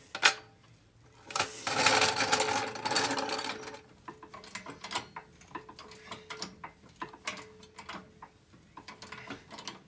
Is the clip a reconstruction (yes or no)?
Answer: no